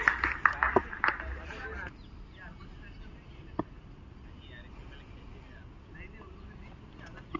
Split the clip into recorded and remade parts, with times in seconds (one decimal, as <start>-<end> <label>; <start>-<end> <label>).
0.0-7.4 recorded